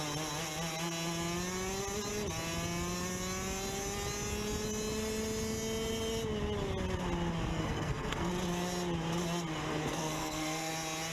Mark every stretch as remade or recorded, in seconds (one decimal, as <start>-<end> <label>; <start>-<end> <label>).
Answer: 0.0-7.5 recorded; 7.5-8.3 remade; 8.3-9.7 recorded; 9.7-10.7 remade; 10.7-11.1 recorded